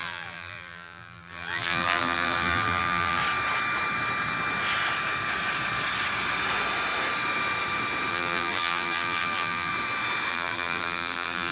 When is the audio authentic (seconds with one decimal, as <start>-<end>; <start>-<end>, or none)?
3.2-8.1; 9.7-10.3